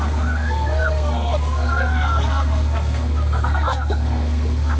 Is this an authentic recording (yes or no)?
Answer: no